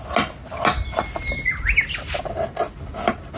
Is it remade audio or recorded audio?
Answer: recorded